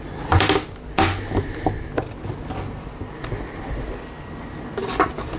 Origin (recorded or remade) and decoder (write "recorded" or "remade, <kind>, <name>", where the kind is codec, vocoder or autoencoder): recorded